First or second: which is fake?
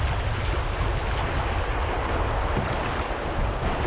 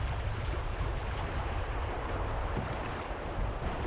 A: second